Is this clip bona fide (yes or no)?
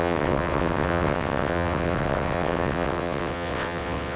no